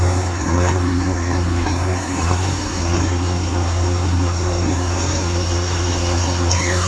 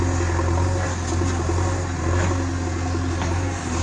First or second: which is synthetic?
first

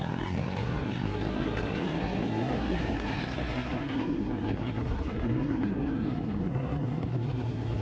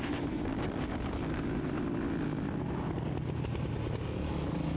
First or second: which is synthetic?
first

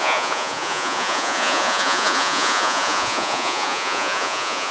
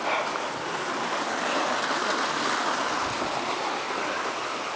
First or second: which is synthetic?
first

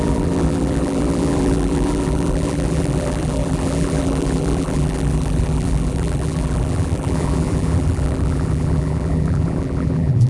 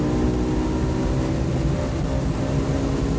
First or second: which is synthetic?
first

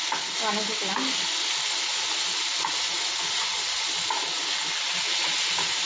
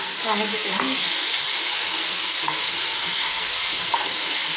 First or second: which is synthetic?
second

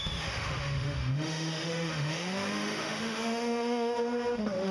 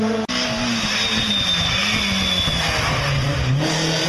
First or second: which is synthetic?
first